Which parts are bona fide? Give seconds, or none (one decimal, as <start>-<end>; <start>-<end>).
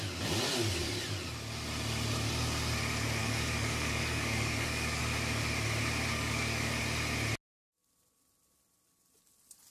0.0-3.2; 5.0-6.1; 6.8-9.7